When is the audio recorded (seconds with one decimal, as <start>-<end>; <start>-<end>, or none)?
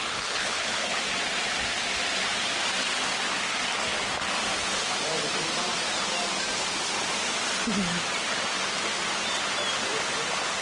1.0-10.6